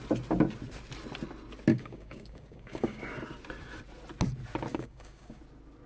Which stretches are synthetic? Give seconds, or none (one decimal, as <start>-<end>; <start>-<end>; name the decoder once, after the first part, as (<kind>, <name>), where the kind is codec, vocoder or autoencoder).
1.7-3.0 (codec, DAC); 4.7-5.4